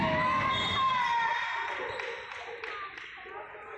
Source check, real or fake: real